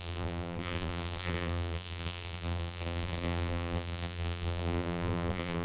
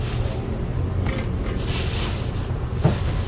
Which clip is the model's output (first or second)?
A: first